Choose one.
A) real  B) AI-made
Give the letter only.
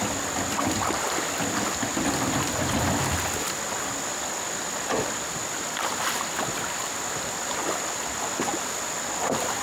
A